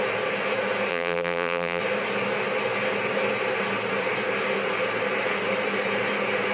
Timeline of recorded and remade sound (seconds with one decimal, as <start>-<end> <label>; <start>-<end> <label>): 0.0-0.9 recorded; 0.9-1.8 remade; 1.8-6.5 recorded